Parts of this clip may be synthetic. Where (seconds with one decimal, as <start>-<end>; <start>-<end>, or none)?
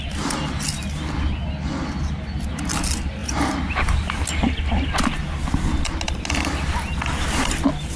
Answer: none